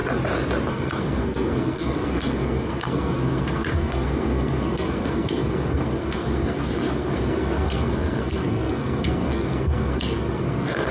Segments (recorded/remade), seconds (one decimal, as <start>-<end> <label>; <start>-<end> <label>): 0.0-0.7 recorded; 0.7-10.9 remade